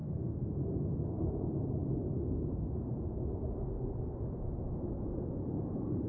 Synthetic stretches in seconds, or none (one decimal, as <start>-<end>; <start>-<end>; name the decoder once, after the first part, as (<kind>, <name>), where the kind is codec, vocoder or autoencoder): 0.0-0.5 (codec, SNAC)

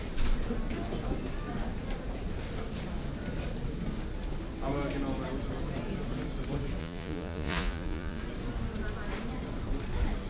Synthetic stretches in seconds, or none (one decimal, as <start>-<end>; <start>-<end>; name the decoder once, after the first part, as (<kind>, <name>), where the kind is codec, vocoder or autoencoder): 6.8-8.2 (vocoder, Vocos)